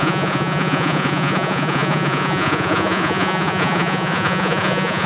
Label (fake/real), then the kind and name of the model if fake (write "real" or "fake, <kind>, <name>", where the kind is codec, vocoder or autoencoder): fake, vocoder, Vocos